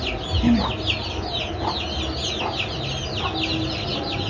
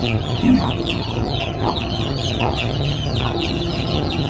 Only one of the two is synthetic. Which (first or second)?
second